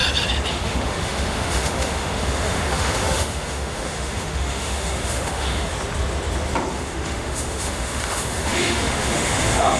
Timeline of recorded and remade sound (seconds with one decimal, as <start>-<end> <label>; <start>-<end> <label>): 0.0-0.5 recorded; 0.5-5.7 remade; 5.7-6.7 recorded; 6.7-9.8 remade